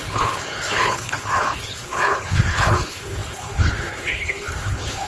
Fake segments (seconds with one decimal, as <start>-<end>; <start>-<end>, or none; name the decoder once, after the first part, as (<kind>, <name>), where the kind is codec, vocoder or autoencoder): 0.0-5.1 (codec, HILCodec)